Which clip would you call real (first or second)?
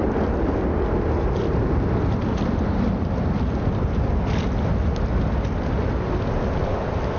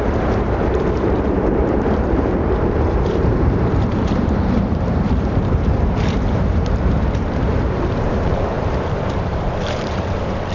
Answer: first